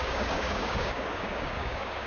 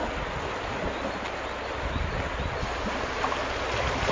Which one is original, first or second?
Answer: second